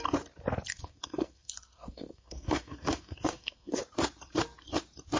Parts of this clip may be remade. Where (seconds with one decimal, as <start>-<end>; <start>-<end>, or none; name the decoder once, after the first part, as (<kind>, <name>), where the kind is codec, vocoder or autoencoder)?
0.7-3.8 (codec, SNAC)